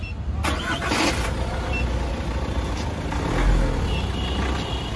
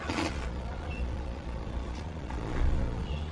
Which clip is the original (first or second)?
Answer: first